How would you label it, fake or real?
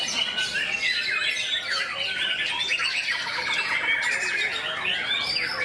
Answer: real